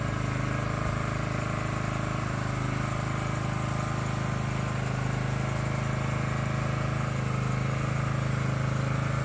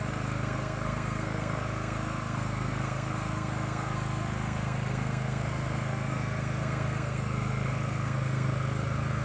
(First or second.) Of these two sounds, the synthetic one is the second